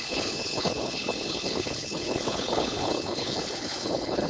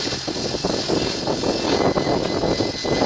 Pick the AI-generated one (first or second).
first